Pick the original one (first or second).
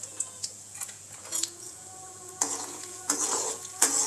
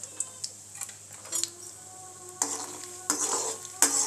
second